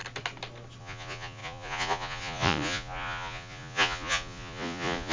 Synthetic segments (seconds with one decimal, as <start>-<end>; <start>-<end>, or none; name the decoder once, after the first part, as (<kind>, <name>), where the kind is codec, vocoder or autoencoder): 0.8-5.1 (vocoder, Vocos)